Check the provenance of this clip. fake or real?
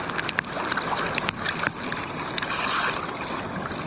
real